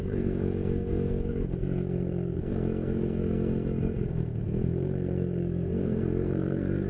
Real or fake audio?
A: fake